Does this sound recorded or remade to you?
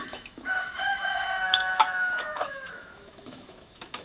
remade